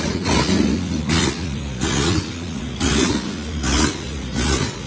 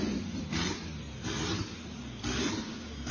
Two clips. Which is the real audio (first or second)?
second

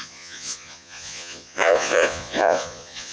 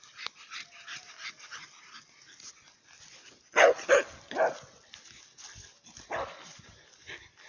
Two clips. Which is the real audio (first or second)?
second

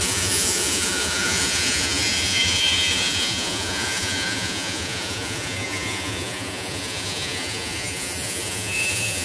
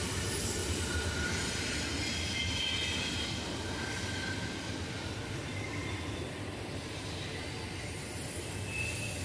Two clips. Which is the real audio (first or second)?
second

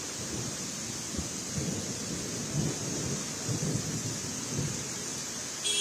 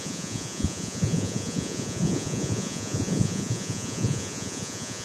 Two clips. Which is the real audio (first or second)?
first